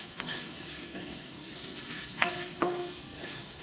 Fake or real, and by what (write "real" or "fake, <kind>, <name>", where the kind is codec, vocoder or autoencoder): fake, codec, SNAC